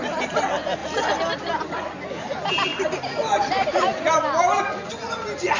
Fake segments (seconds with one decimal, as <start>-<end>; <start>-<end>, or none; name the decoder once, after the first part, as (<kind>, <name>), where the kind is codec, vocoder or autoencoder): 0.8-1.3 (vocoder, BigVGAN v2); 2.7-4.6